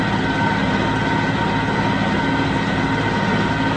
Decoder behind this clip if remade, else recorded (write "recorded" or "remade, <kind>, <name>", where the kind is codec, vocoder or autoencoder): recorded